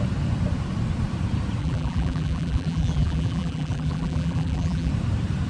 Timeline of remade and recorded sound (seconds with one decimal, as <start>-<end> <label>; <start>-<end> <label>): 0.0-1.6 recorded; 1.6-4.9 remade; 4.9-5.5 recorded